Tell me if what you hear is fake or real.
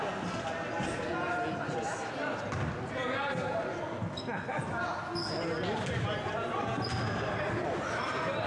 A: real